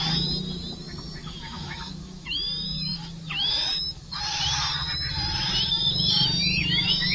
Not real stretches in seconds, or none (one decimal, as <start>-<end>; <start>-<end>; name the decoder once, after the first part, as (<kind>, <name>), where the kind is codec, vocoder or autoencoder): 1.2-4.2 (autoencoder, DAC-VAE)